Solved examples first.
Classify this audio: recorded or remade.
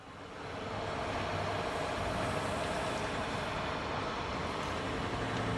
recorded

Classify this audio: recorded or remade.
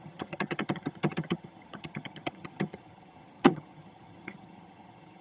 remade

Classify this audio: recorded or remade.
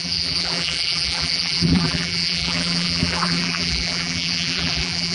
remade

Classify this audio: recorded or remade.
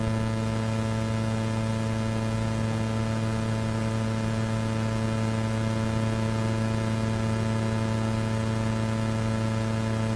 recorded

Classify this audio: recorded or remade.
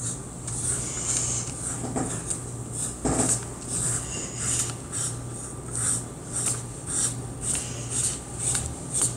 recorded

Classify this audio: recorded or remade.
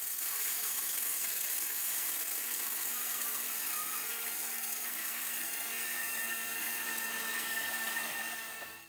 remade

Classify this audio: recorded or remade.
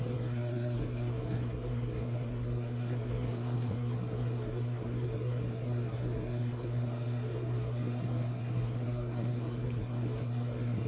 remade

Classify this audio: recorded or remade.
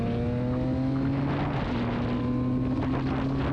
recorded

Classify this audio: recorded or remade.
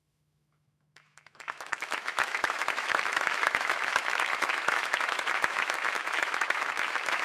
remade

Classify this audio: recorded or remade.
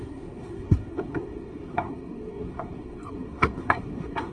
remade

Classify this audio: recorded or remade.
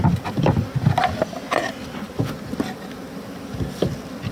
recorded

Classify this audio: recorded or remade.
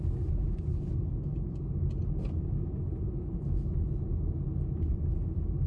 recorded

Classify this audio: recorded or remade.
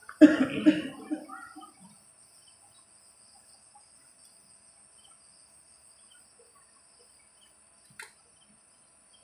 recorded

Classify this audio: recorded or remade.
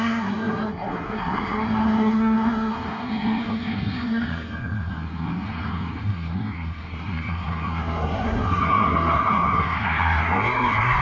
remade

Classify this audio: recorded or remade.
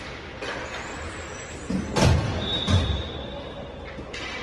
recorded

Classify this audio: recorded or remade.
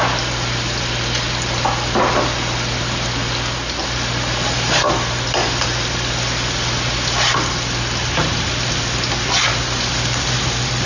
recorded